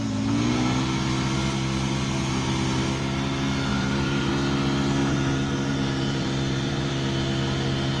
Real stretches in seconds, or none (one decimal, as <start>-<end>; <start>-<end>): 0.0-3.7; 4.3-5.0; 6.9-8.0